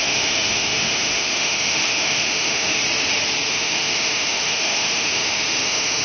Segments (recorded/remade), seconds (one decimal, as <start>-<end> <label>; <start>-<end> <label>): 0.0-2.8 remade; 2.8-3.5 recorded; 3.5-6.0 remade